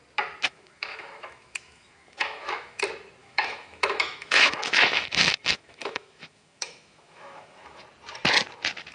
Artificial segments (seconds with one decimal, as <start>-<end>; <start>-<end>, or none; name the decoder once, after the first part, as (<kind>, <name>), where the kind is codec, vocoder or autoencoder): 0.5-2.8 (autoencoder, DAC-VAE); 3.2-7.8